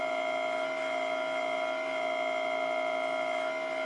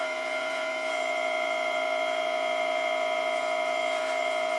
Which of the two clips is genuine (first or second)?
first